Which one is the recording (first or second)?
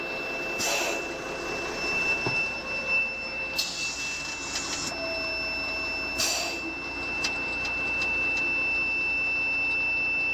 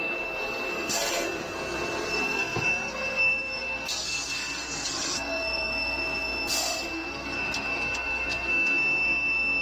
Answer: first